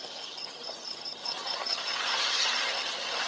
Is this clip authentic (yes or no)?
no